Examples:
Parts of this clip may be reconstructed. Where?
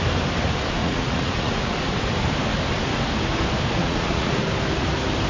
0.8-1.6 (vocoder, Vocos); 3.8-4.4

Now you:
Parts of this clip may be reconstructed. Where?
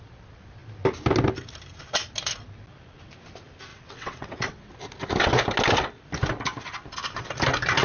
3.7-4.7 (vocoder, WaveNeXt)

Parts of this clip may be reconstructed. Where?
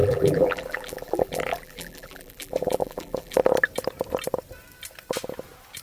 0.0-3.5 (vocoder, BigVGAN v2)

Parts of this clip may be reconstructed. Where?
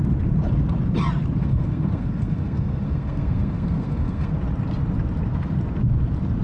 1.4-4.3 (codec, SNAC)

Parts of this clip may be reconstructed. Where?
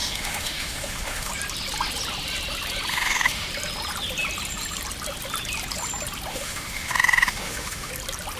0.0-1.3 (autoencoder, DAC-VAE); 2.9-3.5; 6.3-7.9